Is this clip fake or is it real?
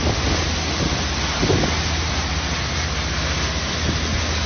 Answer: real